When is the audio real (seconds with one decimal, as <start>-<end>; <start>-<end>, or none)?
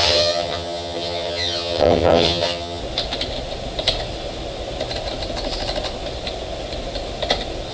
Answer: 2.8-7.7